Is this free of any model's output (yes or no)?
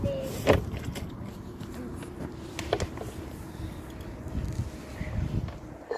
yes